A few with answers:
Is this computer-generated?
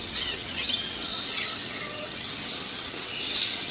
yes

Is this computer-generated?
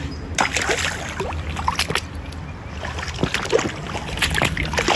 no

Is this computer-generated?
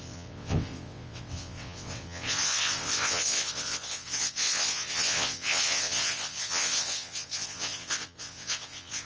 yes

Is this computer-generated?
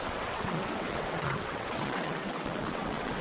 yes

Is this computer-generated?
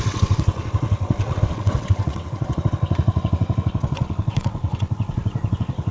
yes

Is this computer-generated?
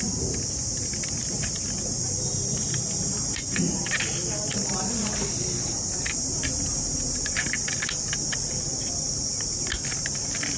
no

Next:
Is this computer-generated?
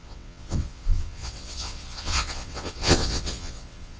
yes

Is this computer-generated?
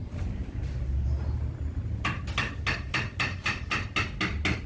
no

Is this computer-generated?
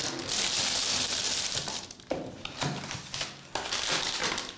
no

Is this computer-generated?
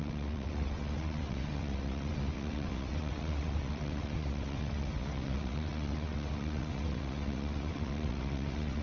yes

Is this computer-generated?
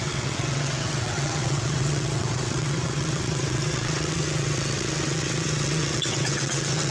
yes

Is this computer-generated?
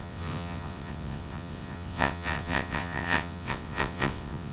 yes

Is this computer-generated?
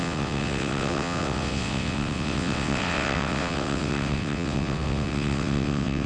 yes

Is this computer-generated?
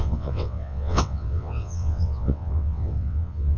yes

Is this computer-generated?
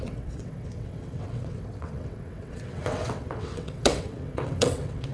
yes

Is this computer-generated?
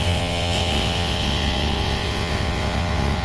yes